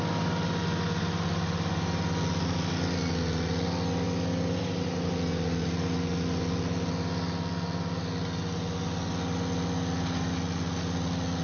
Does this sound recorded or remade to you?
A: recorded